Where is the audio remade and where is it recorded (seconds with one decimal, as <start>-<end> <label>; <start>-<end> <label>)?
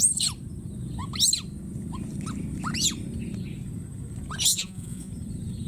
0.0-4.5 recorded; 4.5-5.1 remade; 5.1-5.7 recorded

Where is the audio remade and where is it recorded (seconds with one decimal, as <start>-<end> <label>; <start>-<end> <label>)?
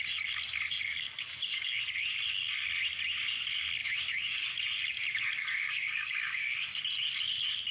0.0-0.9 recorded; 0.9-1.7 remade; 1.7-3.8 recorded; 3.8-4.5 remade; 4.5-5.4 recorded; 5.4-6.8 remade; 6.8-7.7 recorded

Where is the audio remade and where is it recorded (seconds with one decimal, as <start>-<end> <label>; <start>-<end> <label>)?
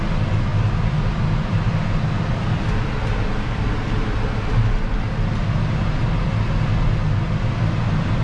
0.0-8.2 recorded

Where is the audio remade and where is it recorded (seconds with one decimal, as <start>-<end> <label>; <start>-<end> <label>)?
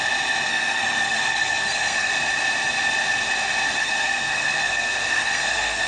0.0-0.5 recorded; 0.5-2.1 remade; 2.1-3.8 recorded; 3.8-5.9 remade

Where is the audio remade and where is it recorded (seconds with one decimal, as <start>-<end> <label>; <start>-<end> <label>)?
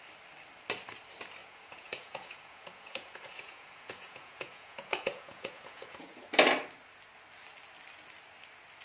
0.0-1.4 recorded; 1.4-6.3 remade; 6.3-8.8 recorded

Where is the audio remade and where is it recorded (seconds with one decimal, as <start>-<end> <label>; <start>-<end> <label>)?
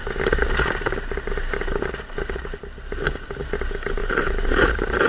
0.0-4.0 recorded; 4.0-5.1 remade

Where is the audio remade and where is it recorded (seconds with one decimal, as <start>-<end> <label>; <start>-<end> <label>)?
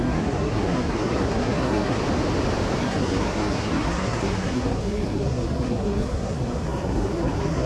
0.0-2.0 remade; 2.0-2.8 recorded; 2.8-7.7 remade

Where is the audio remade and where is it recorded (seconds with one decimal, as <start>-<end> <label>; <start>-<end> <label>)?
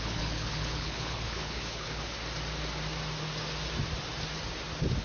0.0-2.2 remade; 2.2-5.0 recorded